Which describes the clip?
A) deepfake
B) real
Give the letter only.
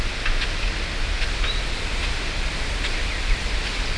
B